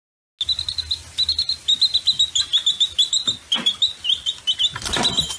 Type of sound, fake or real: real